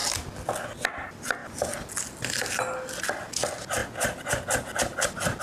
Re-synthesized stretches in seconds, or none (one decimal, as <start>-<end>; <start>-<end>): none